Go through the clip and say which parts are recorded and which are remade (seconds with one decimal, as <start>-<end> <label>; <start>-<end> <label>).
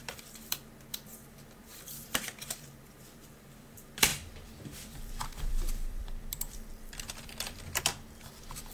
0.0-8.7 remade